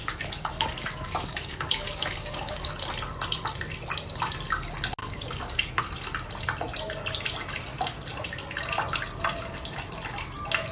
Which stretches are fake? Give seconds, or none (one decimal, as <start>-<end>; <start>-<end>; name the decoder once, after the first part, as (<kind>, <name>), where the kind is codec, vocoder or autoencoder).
0.0-2.7 (codec, DAC); 5.0-5.8